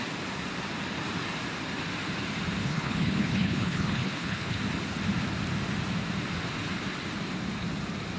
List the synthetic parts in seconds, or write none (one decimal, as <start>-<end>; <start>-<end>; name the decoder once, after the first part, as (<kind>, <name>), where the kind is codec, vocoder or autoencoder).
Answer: 2.6-4.6 (codec, HILCodec)